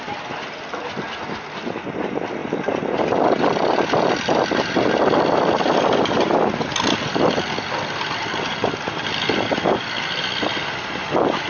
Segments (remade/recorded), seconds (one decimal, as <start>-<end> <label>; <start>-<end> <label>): 0.0-11.5 recorded